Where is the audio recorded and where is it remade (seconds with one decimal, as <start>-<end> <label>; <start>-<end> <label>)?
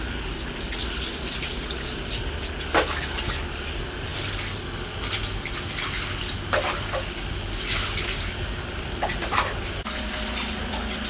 0.0-11.1 recorded